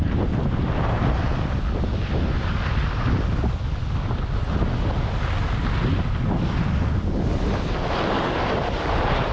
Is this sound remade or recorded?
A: recorded